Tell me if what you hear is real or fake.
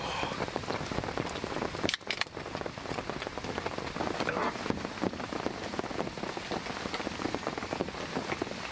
real